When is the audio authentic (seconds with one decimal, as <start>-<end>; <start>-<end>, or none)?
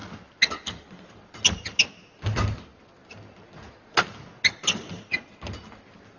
0.0-6.2